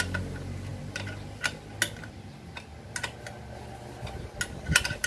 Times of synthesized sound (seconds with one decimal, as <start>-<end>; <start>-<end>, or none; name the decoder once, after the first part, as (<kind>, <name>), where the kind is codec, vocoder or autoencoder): none